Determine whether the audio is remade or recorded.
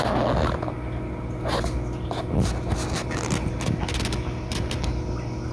recorded